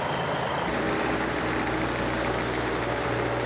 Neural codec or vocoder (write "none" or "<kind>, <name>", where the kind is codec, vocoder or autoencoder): none